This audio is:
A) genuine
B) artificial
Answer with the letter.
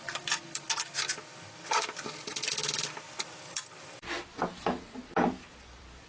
B